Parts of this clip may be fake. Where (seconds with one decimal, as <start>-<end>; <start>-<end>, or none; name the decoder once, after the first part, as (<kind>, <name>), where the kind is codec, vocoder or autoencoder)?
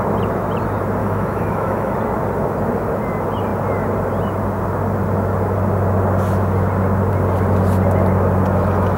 1.0-1.9 (autoencoder, DAC-VAE)